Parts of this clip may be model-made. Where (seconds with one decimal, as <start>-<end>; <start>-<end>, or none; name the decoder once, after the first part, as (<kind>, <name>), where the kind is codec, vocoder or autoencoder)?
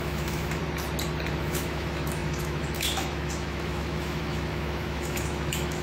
0.0-0.6 (autoencoder, DAC-VAE); 1.4-5.8